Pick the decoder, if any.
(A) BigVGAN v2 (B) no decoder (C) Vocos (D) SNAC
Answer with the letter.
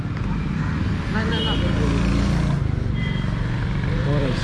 B